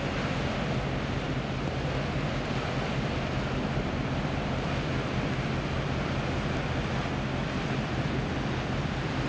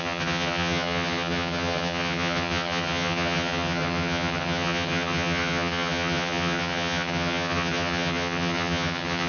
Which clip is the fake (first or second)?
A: second